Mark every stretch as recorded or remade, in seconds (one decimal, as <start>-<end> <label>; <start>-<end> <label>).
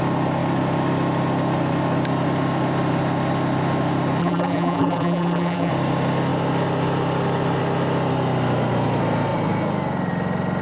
0.0-4.2 recorded; 4.2-5.7 remade; 5.7-10.6 recorded